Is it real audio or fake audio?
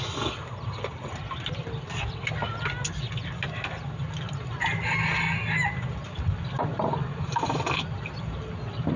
real